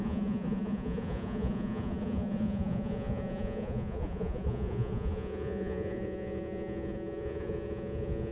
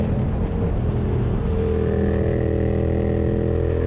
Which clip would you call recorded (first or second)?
second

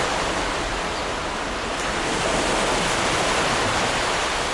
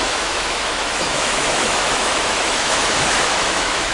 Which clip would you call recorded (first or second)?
first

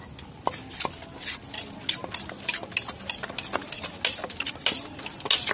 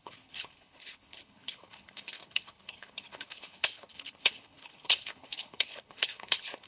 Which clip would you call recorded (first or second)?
first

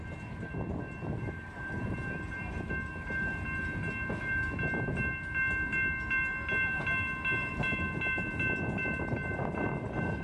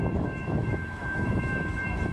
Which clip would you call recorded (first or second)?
first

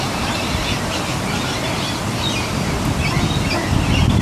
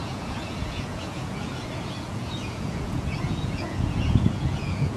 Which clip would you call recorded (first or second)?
first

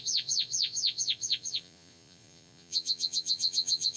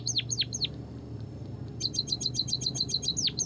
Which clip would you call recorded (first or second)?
second